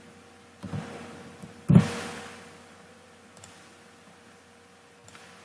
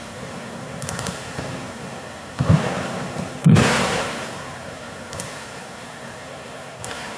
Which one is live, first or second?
first